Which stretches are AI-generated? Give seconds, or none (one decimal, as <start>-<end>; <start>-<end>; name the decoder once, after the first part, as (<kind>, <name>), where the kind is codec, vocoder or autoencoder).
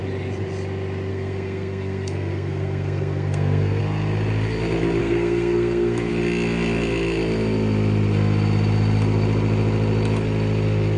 1.1-3.8 (codec, SNAC); 5.0-6.1